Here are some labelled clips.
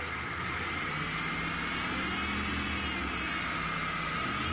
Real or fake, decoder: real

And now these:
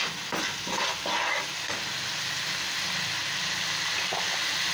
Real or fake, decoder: real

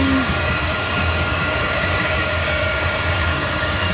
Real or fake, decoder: fake, codec, DAC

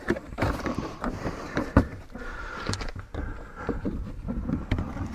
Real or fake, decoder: fake, vocoder, BigVGAN v2